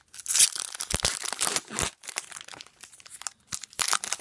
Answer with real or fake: real